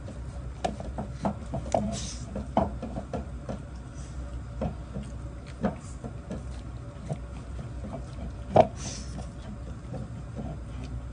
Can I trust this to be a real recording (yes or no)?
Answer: yes